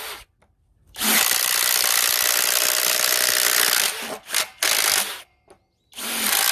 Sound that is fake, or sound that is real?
real